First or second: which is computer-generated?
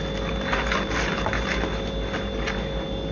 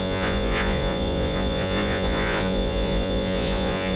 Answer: second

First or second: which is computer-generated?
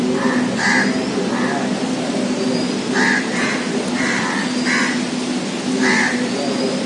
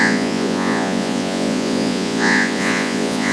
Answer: second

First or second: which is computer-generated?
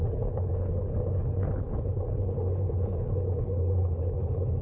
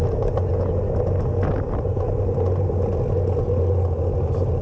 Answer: first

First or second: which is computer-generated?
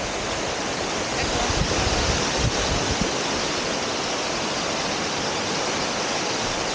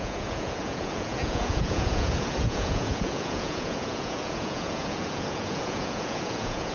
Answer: second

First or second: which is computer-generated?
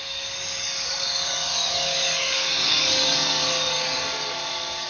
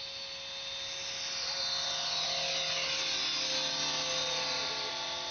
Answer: first